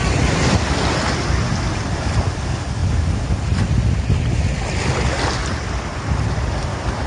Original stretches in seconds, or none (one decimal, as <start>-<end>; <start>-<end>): 0.0-7.1